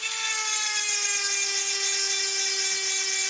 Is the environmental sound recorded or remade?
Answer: recorded